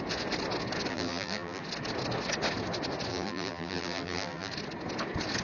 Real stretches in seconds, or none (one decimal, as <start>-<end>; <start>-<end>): 0.0-0.9; 1.6-3.1; 4.5-5.4